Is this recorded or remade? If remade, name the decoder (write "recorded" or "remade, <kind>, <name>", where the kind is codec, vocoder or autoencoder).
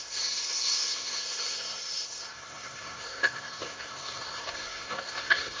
remade, codec, SNAC